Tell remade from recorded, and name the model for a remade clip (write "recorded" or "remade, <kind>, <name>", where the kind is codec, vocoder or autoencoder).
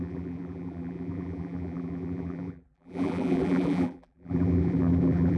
remade, vocoder, BigVGAN v2